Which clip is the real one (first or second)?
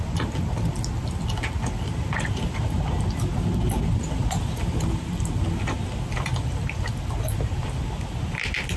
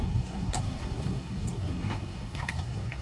first